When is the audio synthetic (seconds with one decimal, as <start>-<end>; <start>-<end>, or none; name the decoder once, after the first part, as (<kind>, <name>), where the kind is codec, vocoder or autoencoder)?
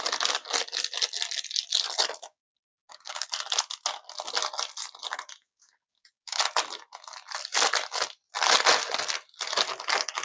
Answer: 2.3-3.3 (codec, DAC); 5.4-6.4